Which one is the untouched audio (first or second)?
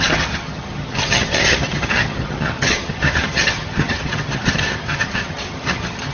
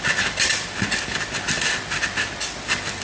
second